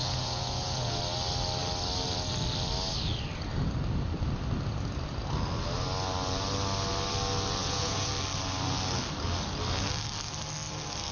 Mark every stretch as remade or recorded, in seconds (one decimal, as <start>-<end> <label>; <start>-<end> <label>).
0.0-1.0 remade; 1.0-7.6 recorded; 7.6-8.1 remade; 8.1-11.1 recorded